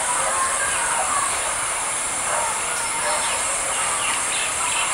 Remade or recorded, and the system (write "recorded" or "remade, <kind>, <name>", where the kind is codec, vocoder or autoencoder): remade, vocoder, BigVGAN v2